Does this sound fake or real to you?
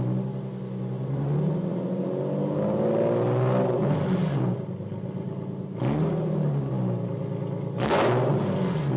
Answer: real